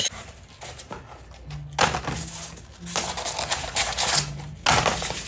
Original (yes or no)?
yes